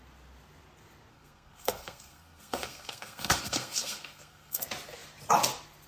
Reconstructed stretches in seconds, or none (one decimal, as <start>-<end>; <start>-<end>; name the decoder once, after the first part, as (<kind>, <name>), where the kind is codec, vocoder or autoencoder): 1.1-4.6 (codec, SNAC)